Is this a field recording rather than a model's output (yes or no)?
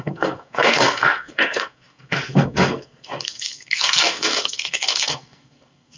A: no